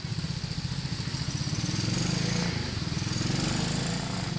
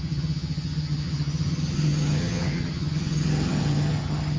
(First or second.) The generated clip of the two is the second